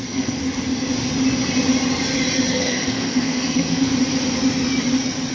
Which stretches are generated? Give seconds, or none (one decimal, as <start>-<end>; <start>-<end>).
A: 0.0-0.4; 2.5-3.9